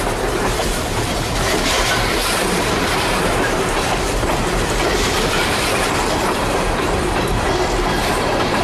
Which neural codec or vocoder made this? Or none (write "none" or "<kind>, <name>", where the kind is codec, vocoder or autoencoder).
vocoder, BigVGAN v2